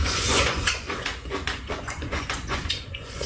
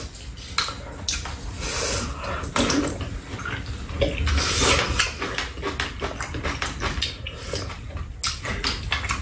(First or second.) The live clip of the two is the second